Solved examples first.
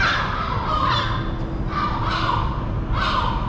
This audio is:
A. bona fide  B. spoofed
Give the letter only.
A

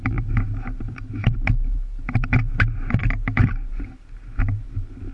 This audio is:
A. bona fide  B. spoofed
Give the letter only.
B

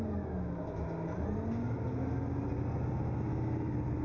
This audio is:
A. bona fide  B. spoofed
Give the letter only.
A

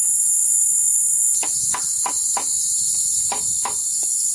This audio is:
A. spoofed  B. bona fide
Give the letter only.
B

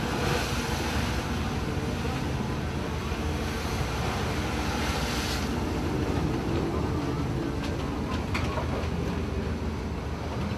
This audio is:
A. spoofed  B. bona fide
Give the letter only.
B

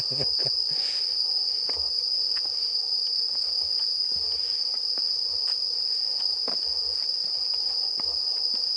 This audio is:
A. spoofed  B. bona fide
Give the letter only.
B